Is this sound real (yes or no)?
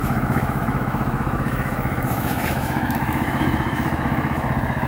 no